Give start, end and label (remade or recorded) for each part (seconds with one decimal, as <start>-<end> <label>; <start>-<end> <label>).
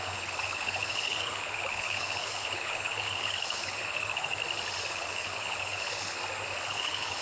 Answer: 0.0-4.3 remade; 4.3-4.9 recorded; 4.9-6.2 remade; 6.2-6.7 recorded; 6.7-7.2 remade